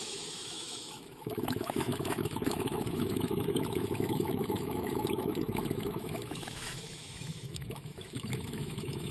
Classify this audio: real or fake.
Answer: fake